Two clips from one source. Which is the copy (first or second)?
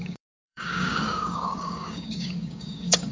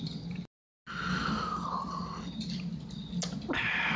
first